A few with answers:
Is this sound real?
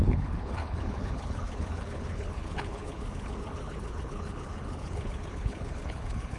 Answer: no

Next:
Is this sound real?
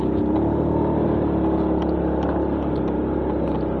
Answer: yes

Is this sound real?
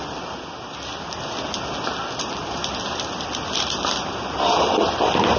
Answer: yes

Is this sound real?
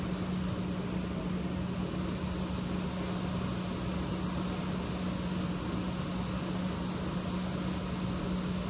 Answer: yes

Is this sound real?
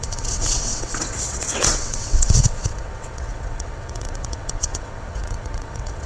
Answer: no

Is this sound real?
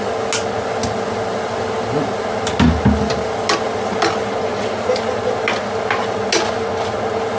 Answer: yes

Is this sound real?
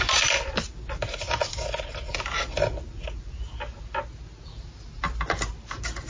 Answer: yes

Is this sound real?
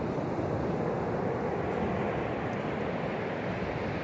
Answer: yes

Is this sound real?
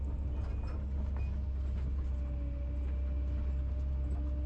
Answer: yes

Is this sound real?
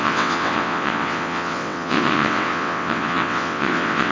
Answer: no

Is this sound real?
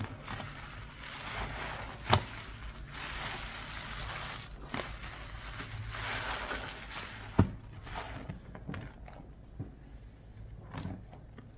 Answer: yes